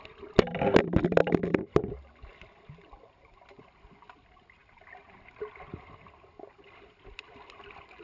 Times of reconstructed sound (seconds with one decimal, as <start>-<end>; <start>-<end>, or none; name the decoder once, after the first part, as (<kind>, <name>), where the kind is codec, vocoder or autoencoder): none